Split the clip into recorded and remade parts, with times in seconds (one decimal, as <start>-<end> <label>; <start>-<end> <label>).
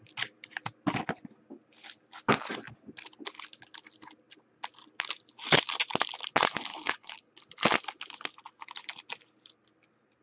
0.0-6.7 recorded; 6.7-7.3 remade; 7.3-10.2 recorded